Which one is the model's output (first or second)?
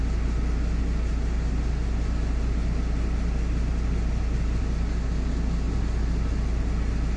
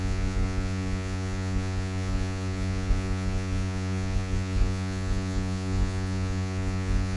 second